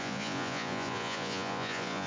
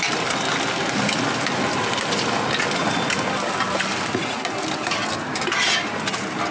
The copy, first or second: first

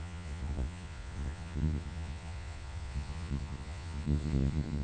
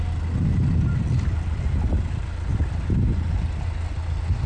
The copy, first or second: first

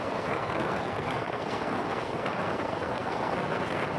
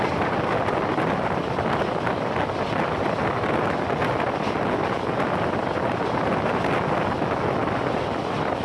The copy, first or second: first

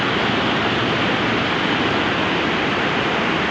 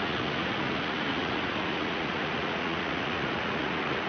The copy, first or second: second